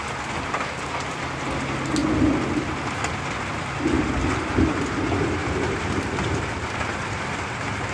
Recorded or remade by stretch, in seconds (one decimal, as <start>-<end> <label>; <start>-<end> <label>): 0.0-7.9 recorded